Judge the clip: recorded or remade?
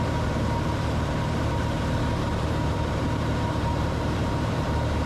remade